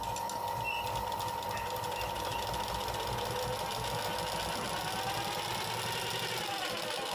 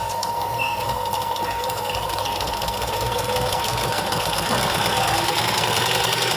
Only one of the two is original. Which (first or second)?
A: first